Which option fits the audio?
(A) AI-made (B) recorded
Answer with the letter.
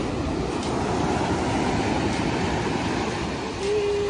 B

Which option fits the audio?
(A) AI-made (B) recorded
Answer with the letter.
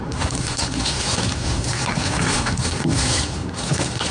A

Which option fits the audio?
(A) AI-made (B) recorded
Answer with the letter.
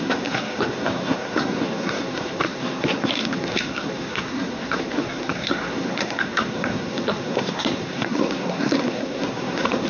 A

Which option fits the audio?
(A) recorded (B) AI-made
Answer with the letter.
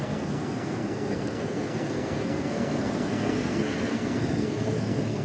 B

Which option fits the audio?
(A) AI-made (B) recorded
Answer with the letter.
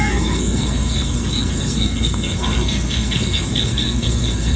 A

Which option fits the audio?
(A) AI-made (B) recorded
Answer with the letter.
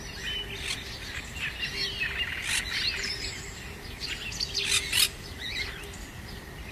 B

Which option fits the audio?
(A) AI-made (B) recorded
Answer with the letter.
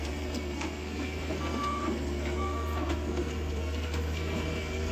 A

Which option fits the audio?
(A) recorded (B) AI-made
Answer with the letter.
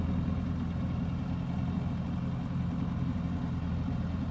A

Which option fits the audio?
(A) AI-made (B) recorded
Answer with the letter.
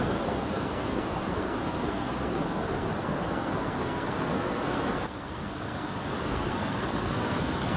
A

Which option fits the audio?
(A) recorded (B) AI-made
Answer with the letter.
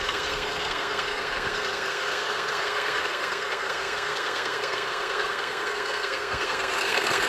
B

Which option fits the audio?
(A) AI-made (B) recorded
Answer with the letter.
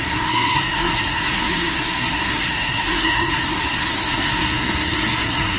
A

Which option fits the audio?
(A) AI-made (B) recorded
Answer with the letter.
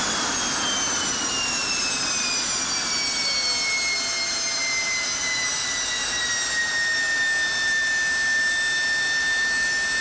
B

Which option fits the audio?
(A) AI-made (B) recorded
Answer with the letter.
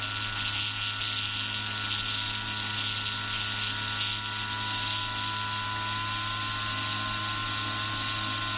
B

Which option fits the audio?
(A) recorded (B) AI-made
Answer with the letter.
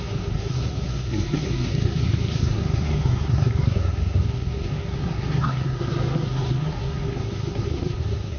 B